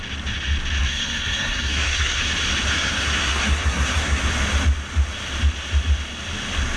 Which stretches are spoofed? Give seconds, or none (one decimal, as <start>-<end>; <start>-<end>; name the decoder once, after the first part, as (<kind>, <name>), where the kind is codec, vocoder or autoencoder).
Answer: 0.8-2.2 (codec, SNAC); 2.7-4.2